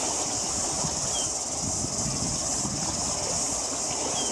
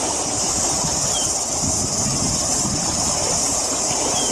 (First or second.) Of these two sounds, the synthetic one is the second